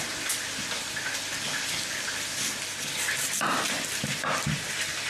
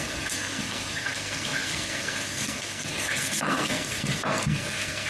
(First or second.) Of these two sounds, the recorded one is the first